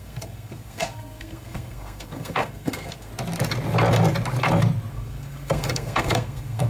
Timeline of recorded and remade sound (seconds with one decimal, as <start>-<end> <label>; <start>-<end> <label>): 0.0-3.1 remade; 3.1-4.9 recorded; 4.9-6.7 remade

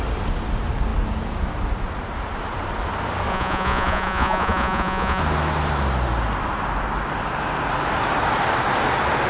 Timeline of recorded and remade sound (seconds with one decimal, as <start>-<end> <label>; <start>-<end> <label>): 0.0-3.3 recorded; 3.3-5.2 remade; 5.2-9.3 recorded

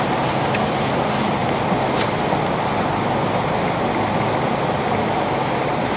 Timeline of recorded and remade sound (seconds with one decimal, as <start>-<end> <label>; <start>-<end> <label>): 0.0-6.0 recorded